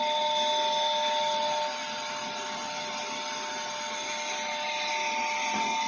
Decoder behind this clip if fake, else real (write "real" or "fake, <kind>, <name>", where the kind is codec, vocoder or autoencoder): real